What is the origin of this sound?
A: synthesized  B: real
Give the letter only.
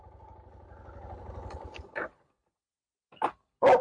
B